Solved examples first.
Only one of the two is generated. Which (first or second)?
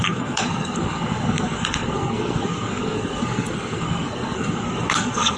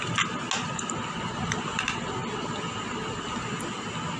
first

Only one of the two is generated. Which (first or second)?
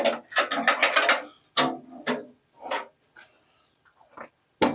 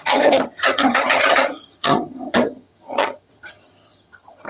second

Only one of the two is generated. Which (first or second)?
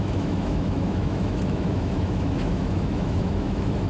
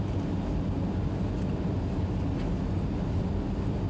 first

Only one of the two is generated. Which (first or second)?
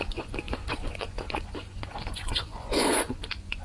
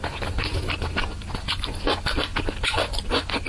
first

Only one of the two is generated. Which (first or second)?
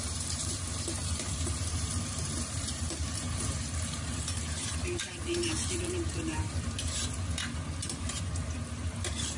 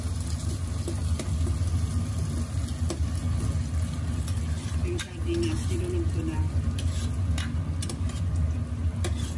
first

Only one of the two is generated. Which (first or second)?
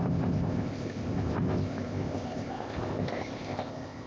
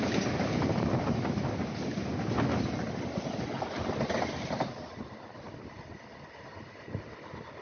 first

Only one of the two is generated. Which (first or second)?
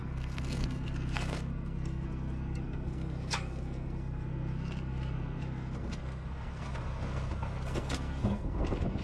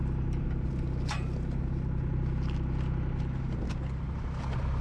first